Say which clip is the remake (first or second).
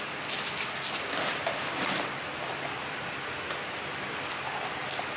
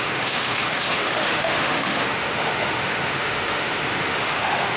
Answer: second